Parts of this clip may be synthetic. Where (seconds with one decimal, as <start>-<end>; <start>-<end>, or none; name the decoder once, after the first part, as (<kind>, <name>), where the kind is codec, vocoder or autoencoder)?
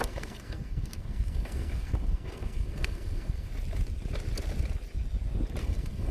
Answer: 0.0-3.5 (codec, SNAC); 5.6-6.1